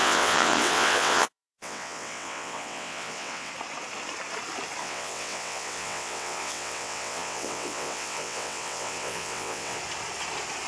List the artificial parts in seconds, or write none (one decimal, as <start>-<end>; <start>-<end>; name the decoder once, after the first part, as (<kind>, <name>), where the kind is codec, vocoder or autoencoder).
0.0-3.5 (vocoder, WaveNeXt); 4.8-9.8